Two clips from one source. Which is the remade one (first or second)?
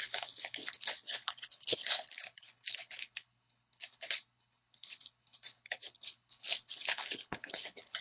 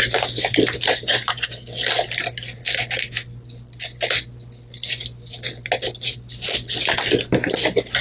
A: first